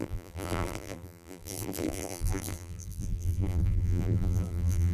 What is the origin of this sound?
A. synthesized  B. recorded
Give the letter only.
A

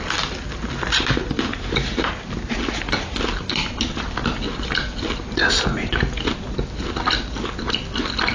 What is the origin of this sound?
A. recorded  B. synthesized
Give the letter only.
A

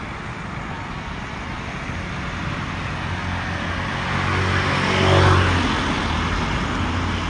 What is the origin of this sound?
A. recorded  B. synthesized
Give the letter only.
A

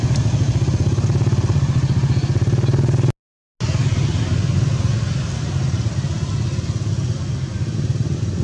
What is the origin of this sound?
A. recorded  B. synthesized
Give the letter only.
A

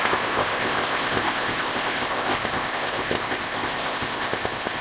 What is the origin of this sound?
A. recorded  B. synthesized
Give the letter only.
B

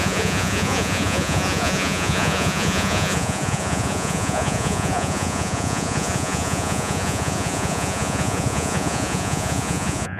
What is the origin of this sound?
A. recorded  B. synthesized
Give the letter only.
B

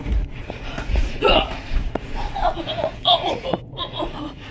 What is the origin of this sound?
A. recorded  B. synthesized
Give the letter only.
B